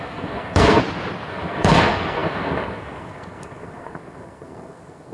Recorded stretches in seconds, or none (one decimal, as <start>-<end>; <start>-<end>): 0.8-1.3

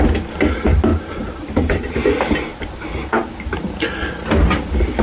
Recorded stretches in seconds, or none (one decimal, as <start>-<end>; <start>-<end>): 0.0-0.9; 1.7-5.0

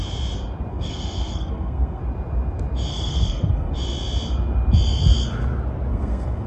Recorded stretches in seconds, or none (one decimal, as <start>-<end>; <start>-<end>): 0.0-0.7; 2.0-2.9; 3.7-5.9

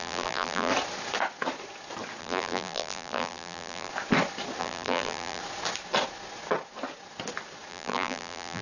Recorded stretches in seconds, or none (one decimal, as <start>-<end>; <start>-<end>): 0.7-2.2; 3.9-4.6; 5.4-7.7

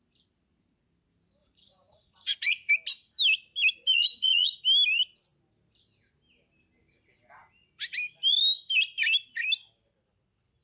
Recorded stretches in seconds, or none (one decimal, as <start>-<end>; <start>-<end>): 0.0-1.4; 2.7-3.9; 4.6-10.6

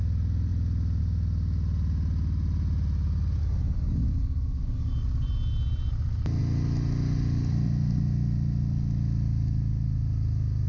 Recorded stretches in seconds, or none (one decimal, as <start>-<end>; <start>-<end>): 0.0-3.4; 4.9-10.7

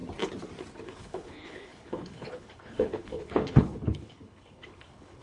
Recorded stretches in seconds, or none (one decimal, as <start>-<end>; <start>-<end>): 0.0-0.8

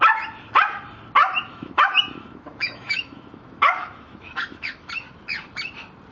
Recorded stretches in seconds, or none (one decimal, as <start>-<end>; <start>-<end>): 0.0-1.2; 4.9-6.1